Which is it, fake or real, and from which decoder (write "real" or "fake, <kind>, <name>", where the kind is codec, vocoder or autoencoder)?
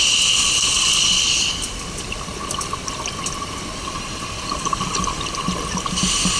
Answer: real